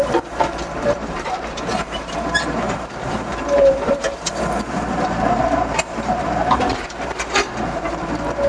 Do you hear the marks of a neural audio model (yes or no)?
yes